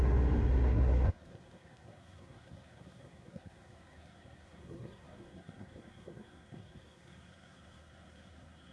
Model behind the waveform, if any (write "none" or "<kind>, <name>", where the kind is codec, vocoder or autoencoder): codec, SNAC